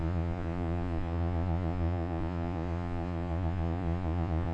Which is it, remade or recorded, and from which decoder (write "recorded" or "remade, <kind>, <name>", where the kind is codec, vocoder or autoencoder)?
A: remade, vocoder, Vocos